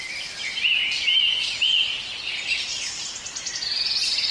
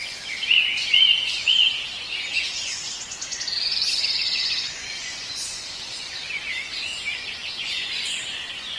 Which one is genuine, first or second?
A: first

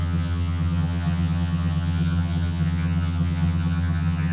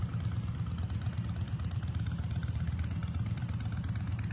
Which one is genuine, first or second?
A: second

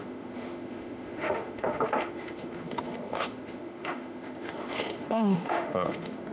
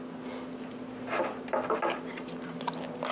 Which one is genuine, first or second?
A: second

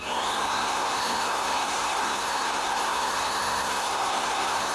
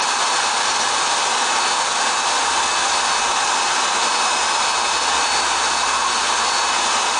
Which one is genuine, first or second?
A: second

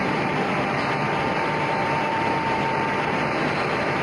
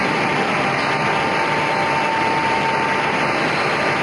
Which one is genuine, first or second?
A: second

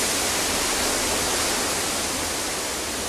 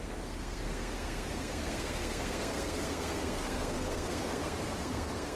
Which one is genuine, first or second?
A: first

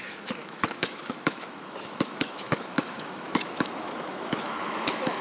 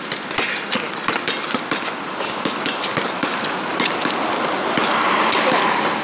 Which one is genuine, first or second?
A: second